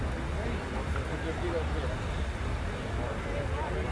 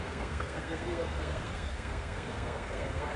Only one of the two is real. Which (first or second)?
first